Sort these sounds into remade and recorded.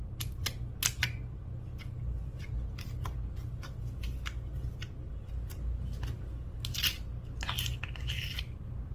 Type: recorded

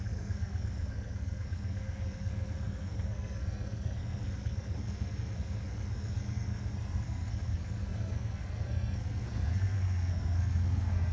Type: remade